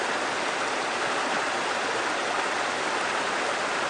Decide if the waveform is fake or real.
real